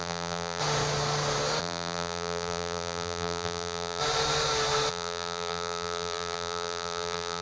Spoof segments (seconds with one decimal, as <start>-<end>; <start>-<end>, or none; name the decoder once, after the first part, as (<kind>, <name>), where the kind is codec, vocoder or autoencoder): 0.0-0.6 (vocoder, BigVGAN v2); 1.6-4.0; 4.9-7.4